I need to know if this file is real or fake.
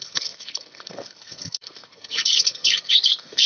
fake